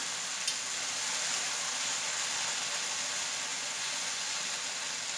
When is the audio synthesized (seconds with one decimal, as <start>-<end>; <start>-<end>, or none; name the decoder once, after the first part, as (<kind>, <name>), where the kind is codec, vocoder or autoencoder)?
3.5-4.4 (vocoder, Vocos)